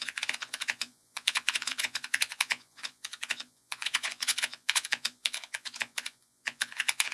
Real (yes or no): no